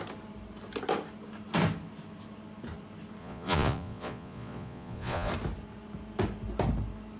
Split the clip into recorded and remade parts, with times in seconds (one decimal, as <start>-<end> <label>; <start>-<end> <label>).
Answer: 0.0-3.2 recorded; 3.2-5.3 remade; 5.3-7.2 recorded